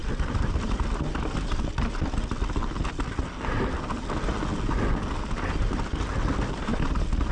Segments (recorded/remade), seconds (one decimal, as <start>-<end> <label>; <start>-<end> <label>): 0.0-1.0 remade; 1.0-6.7 recorded; 6.7-7.3 remade